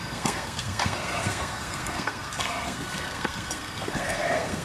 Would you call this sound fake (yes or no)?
yes